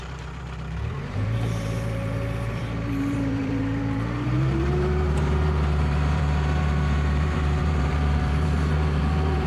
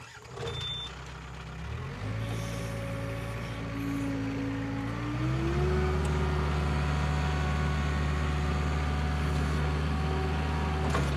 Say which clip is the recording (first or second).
second